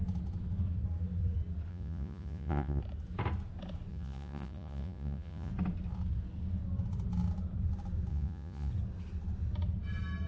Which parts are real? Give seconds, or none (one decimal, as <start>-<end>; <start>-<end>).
0.0-1.7; 2.8-3.9; 5.5-8.1; 8.7-10.3